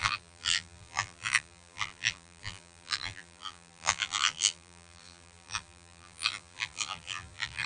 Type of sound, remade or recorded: remade